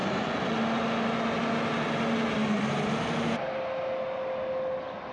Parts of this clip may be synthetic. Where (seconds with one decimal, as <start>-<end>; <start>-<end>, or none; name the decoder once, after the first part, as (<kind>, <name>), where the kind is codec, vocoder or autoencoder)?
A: 2.4-3.3 (vocoder, BigVGAN v2)